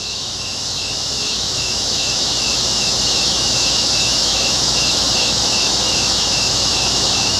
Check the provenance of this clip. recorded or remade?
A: remade